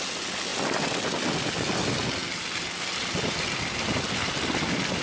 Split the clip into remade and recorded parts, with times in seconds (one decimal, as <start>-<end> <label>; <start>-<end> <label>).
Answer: 0.0-5.0 recorded